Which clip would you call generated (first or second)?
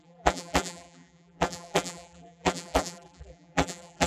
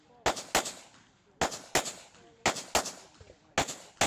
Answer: first